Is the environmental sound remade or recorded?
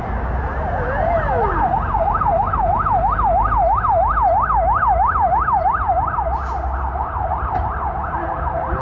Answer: recorded